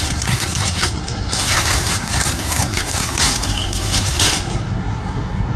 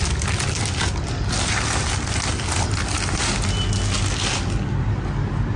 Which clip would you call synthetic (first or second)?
first